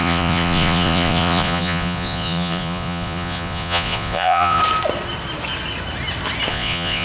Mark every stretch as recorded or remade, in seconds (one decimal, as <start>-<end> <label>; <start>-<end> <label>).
0.0-4.6 remade; 4.6-6.5 recorded; 6.5-7.0 remade